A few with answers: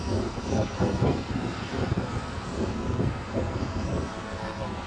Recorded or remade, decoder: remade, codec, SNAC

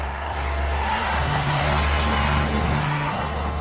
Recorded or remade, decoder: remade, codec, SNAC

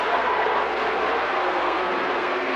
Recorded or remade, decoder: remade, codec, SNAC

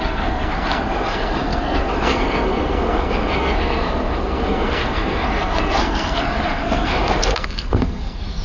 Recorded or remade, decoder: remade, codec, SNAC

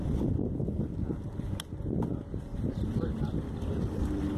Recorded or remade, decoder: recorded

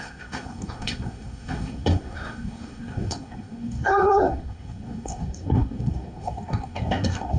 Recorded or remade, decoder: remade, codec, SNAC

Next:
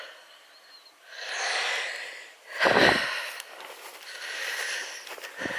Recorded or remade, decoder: recorded